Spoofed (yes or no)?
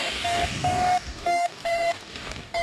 yes